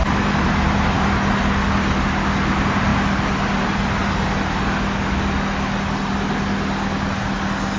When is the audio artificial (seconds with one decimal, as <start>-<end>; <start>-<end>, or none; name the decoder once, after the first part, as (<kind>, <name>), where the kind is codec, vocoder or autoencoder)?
none